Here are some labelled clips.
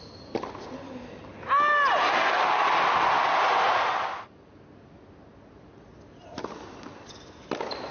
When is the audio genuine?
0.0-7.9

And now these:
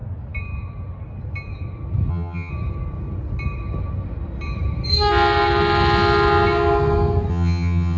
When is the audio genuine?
0.0-2.1; 2.5-7.3